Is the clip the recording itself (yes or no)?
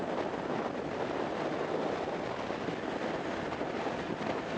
yes